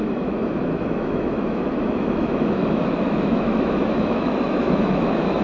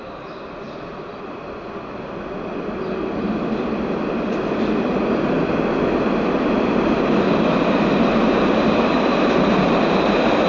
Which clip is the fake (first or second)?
first